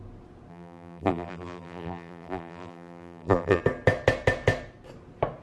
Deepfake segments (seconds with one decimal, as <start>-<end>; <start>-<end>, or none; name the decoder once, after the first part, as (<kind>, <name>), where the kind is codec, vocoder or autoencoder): 0.5-3.6 (vocoder, BigVGAN v2)